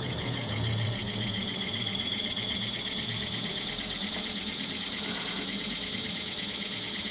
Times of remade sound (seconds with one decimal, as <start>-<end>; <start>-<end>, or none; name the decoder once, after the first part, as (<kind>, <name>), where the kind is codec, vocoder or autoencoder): 0.0-7.1 (vocoder, Vocos)